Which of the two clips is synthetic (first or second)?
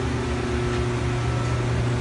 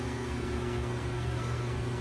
second